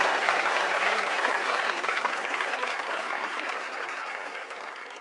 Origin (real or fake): fake